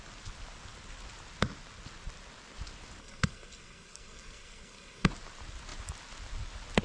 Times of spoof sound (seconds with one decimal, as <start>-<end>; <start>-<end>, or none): 3.0-5.1